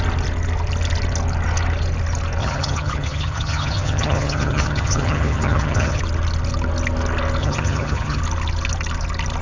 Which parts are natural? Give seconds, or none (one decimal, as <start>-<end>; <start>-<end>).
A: 0.0-2.4; 6.0-7.4; 8.2-9.4